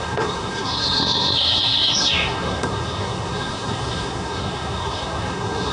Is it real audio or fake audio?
fake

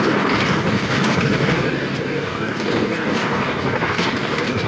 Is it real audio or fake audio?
fake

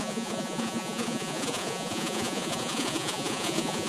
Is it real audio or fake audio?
fake